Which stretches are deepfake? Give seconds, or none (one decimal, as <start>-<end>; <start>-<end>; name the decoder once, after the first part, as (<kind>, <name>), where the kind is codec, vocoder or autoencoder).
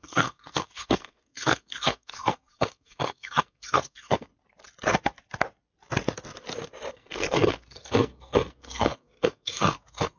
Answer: 0.0-4.3 (codec, SNAC); 6.9-10.2